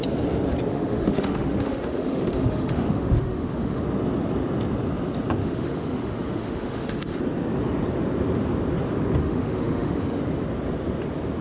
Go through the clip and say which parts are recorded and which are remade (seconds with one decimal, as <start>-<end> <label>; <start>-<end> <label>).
0.0-0.7 recorded; 0.7-3.8 remade; 3.8-5.4 recorded; 5.4-7.2 remade; 7.2-9.2 recorded; 9.2-10.2 remade; 10.2-11.4 recorded